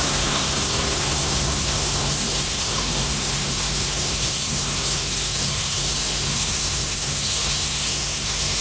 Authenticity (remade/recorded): remade